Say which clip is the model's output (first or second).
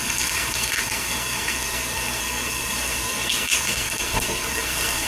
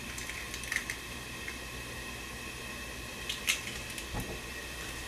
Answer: first